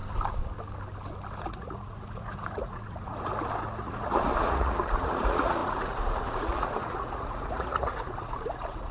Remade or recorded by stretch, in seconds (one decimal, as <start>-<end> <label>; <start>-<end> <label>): 0.0-1.4 recorded; 1.4-3.3 remade; 3.3-3.8 recorded; 3.8-8.9 remade